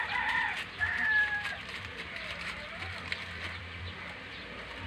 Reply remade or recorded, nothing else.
remade